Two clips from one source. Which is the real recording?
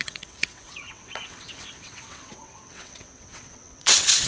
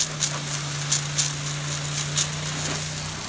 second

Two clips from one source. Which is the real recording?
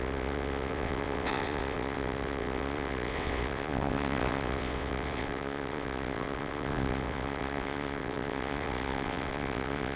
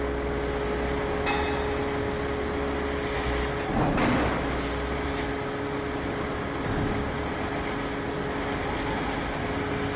second